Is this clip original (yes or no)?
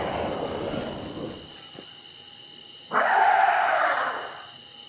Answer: yes